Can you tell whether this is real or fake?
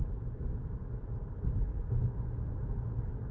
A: real